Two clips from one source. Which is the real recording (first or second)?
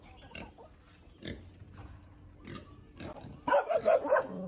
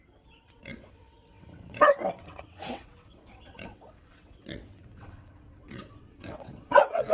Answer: first